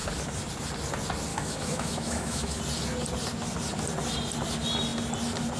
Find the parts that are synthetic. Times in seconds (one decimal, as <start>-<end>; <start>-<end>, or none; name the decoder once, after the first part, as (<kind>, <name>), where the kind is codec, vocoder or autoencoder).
1.3-2.6 (autoencoder, DAC-VAE)